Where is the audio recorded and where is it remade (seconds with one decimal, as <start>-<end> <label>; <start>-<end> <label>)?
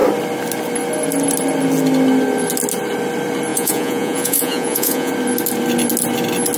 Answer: 0.0-3.5 recorded; 3.5-5.1 remade; 5.1-6.6 recorded